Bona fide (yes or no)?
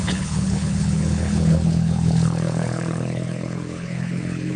no